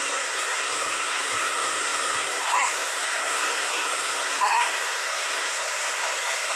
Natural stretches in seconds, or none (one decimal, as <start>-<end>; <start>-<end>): none

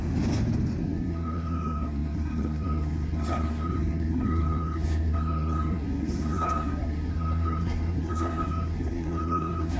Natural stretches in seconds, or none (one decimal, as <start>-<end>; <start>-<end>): 0.0-0.8